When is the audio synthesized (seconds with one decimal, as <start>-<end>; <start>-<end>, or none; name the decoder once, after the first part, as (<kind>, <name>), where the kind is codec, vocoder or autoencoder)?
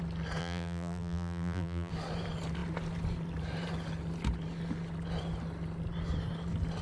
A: 0.4-1.9 (vocoder, BigVGAN v2)